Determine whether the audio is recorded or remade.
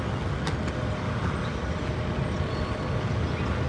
recorded